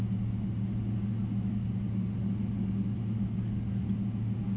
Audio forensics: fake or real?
real